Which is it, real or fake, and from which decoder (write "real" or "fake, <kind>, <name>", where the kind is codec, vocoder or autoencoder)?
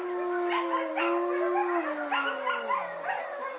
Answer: real